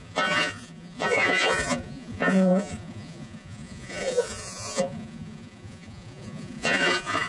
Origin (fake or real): fake